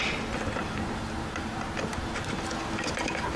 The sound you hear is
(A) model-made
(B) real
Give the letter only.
B